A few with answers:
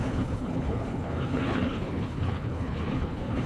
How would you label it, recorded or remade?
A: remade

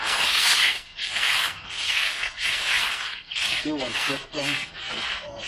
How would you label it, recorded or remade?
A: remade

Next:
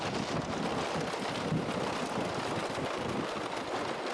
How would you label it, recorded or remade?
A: recorded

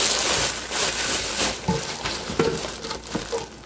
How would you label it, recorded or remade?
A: recorded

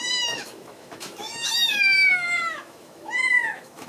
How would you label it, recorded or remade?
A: remade